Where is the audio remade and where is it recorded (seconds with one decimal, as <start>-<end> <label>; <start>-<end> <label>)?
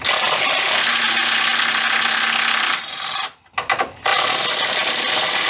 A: 0.0-5.5 recorded